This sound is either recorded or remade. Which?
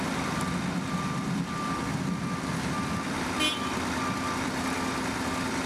recorded